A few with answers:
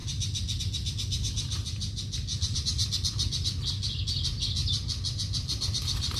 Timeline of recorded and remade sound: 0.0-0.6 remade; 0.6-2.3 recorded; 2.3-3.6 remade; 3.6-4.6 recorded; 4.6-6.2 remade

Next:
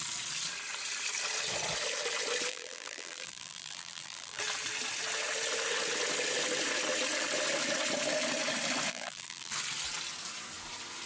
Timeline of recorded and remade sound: 0.0-2.5 recorded; 2.5-4.4 remade; 4.4-8.9 recorded; 8.9-9.5 remade; 9.5-11.1 recorded

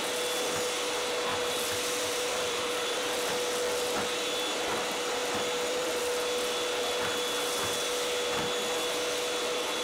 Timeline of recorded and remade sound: 0.0-1.3 recorded; 1.3-3.3 remade; 3.3-5.2 recorded; 5.2-6.0 remade; 6.0-9.8 recorded

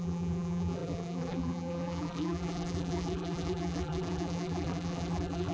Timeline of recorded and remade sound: 0.0-5.5 remade

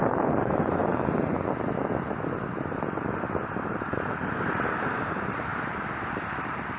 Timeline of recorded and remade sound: 0.0-0.8 remade; 0.8-4.2 recorded; 4.2-5.5 remade; 5.5-6.1 recorded; 6.1-6.8 remade

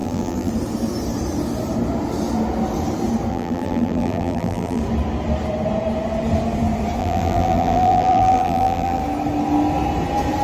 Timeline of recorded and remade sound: 0.0-0.5 remade; 0.5-3.3 recorded; 3.3-4.8 remade; 4.8-7.0 recorded; 7.0-9.0 remade; 9.0-10.4 recorded